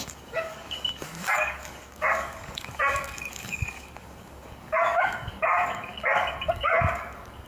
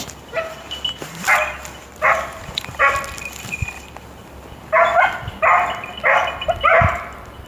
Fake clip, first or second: first